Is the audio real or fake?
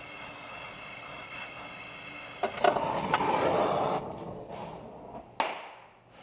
real